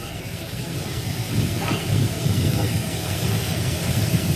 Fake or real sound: fake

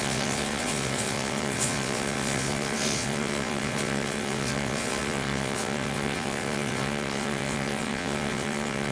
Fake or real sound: fake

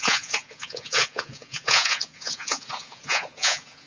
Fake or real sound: fake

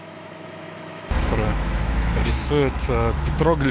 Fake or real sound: fake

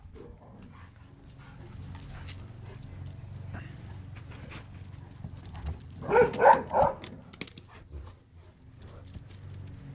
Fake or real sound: real